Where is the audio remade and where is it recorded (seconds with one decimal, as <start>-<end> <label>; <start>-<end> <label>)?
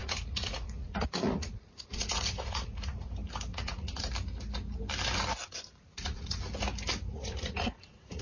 0.0-3.1 remade; 3.1-3.5 recorded; 3.5-4.1 remade; 4.1-5.9 recorded; 5.9-6.4 remade; 6.4-7.1 recorded; 7.1-8.2 remade